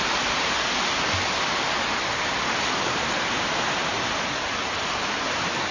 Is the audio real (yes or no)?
yes